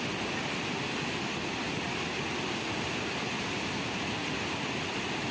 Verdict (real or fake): real